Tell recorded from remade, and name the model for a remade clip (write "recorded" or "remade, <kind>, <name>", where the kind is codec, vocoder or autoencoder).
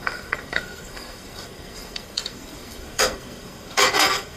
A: remade, codec, SNAC